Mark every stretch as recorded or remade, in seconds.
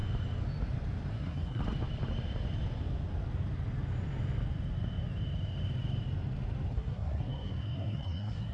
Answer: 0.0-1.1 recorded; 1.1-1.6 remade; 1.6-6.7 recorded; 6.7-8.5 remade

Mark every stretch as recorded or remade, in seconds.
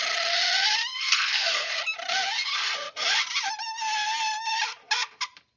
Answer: 0.0-0.9 recorded; 0.9-1.7 remade; 1.7-5.6 recorded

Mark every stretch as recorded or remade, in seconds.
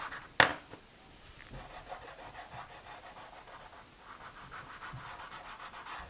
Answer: 0.0-6.1 recorded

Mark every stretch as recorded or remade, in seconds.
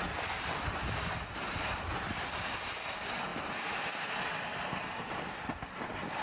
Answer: 0.0-6.2 recorded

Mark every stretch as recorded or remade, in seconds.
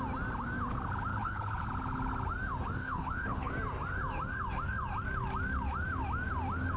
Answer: 0.0-1.1 recorded; 1.1-1.7 remade; 1.7-2.8 recorded; 2.8-3.5 remade; 3.5-6.8 recorded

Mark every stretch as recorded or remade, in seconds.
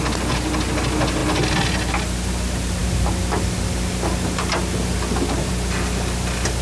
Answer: 0.0-6.6 recorded